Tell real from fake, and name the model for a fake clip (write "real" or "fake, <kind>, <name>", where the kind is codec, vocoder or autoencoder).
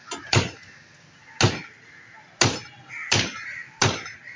real